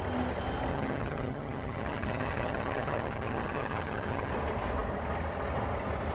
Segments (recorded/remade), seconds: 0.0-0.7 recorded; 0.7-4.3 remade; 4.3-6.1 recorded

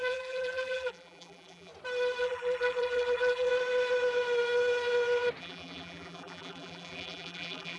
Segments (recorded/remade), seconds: 0.0-1.7 remade; 1.7-2.2 recorded; 2.2-3.5 remade; 3.5-5.4 recorded; 5.4-7.8 remade

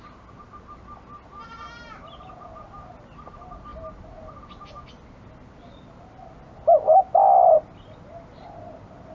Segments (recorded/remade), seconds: 0.0-9.1 recorded

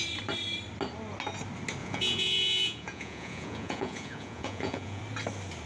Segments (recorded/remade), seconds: 0.0-1.8 recorded; 1.8-5.0 remade; 5.0-5.7 recorded

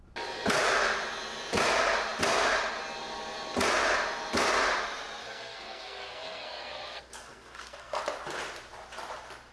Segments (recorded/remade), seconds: 0.0-5.2 recorded; 5.2-8.0 remade; 8.0-9.5 recorded

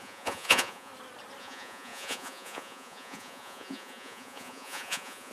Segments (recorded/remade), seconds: 0.0-0.9 remade; 0.9-1.4 recorded; 1.4-5.3 remade